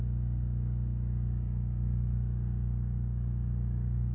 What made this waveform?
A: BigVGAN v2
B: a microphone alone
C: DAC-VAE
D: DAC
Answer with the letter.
D